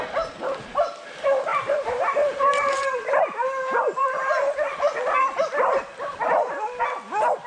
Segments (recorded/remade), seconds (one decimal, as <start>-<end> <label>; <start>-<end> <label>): 0.0-1.5 recorded; 1.5-3.2 remade; 3.2-7.5 recorded